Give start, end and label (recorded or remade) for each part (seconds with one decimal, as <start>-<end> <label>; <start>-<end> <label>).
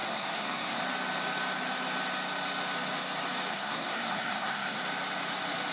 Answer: 0.0-0.8 remade; 0.8-3.5 recorded; 3.5-4.8 remade; 4.8-5.7 recorded